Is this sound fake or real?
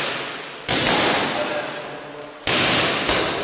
real